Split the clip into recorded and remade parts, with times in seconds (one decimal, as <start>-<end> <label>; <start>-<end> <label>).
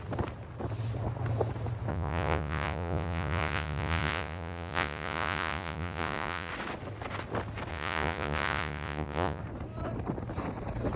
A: 0.0-1.9 recorded; 1.9-6.5 remade; 6.5-7.7 recorded; 7.7-9.4 remade; 9.4-11.0 recorded